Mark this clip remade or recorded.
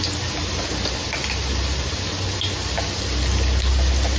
recorded